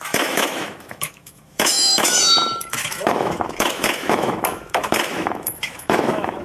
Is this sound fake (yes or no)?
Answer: yes